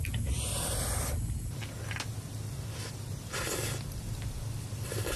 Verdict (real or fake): real